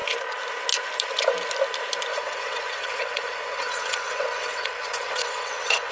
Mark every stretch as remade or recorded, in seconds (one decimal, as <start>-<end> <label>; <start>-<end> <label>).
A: 0.0-2.1 recorded; 2.1-5.9 remade